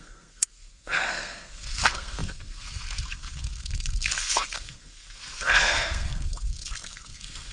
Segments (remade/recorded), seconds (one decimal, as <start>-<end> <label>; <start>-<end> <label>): 0.0-7.5 remade